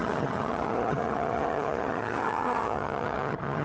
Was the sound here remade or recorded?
remade